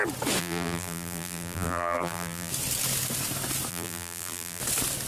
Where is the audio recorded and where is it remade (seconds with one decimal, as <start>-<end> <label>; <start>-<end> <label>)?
0.0-0.4 recorded; 0.4-2.5 remade; 2.5-3.7 recorded; 3.7-4.6 remade; 4.6-5.1 recorded